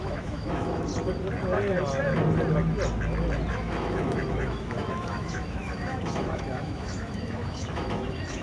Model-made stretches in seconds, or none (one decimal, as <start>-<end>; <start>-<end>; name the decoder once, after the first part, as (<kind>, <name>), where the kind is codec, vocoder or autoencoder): 0.0-0.9 (autoencoder, DAC-VAE); 3.5-8.4